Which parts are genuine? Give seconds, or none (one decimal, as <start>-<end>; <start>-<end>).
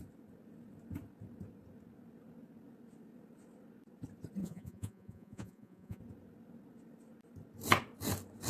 0.0-4.4; 6.0-8.5